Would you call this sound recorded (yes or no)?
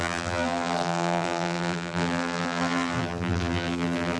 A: no